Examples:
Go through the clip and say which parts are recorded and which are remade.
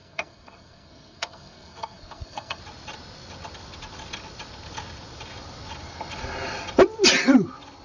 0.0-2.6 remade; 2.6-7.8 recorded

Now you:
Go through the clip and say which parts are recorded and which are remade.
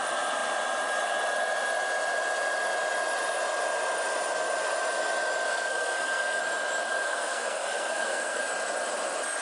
0.0-5.5 recorded; 5.5-6.4 remade; 6.4-6.9 recorded; 6.9-8.4 remade; 8.4-9.4 recorded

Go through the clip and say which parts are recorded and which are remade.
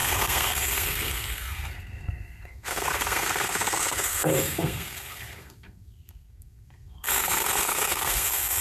0.0-8.6 remade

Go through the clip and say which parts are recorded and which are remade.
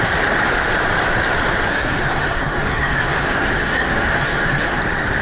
0.0-1.7 recorded; 1.7-4.8 remade; 4.8-5.2 recorded